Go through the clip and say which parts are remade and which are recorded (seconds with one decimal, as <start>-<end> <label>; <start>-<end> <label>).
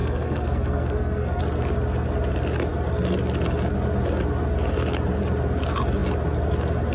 0.0-1.4 remade; 1.4-6.9 recorded